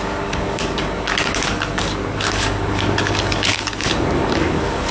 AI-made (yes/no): yes